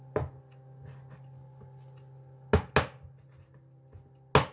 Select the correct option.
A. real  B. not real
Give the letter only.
A